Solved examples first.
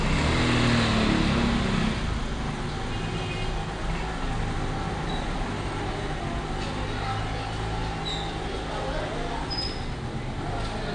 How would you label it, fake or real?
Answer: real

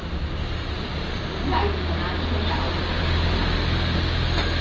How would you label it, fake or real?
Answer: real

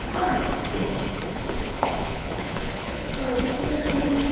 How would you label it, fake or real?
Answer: fake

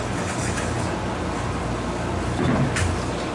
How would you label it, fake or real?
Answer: real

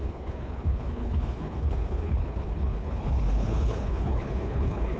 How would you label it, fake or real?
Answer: fake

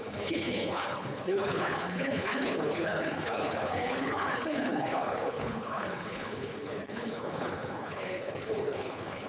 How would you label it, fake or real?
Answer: fake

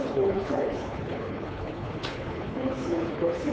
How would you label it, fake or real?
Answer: fake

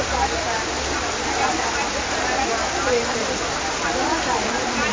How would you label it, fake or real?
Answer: real